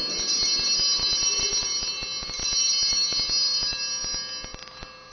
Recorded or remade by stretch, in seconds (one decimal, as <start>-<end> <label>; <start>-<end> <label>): 0.0-5.1 recorded